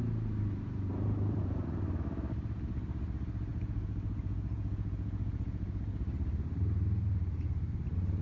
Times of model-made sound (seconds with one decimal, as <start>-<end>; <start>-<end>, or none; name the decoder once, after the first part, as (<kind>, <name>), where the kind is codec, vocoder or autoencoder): 3.5-5.9 (vocoder, Vocos)